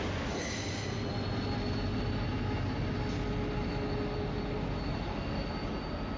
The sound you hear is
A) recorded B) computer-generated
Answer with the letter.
A